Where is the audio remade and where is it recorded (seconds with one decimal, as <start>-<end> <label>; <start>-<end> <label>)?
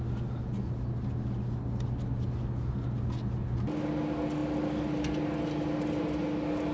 0.0-6.7 recorded